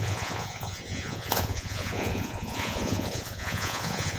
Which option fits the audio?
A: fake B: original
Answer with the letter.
A